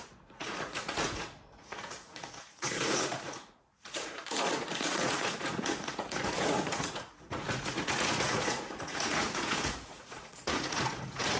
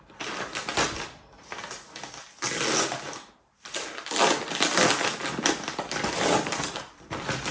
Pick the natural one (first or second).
second